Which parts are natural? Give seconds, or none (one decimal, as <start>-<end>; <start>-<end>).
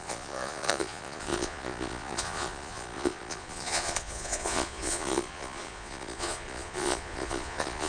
none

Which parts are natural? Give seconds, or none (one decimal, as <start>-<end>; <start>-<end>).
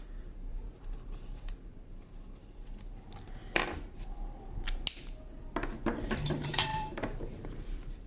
2.4-6.0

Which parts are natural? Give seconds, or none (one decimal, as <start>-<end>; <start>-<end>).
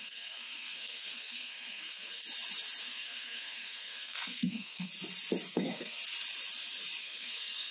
2.2-2.8; 4.9-5.5; 6.0-7.0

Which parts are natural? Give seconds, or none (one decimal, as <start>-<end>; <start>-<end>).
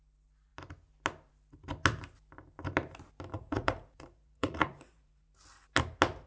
0.0-3.3; 5.3-6.3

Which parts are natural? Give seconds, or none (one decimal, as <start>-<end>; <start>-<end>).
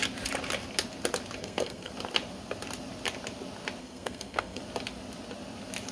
0.0-1.4; 1.9-3.8; 4.6-5.9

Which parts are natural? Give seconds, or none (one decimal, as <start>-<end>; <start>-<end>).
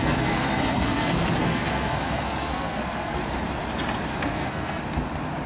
3.2-4.1; 4.8-5.5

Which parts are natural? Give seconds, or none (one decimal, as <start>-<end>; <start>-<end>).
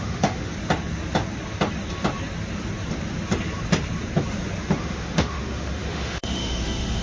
0.5-4.7